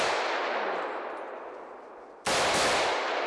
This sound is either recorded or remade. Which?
recorded